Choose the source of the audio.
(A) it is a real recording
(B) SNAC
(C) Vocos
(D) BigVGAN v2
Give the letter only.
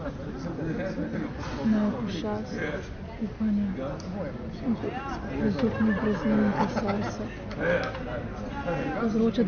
A